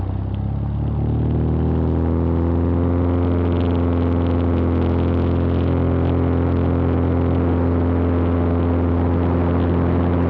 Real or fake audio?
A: real